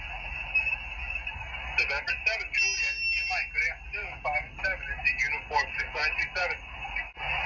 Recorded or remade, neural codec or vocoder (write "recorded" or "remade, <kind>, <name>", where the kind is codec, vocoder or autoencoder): recorded